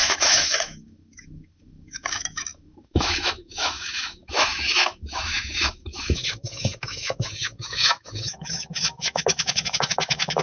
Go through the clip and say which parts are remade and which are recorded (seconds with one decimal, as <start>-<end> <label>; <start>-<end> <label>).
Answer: 0.0-10.4 remade